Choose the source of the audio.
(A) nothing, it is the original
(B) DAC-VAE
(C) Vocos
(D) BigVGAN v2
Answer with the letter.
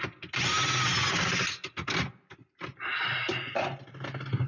A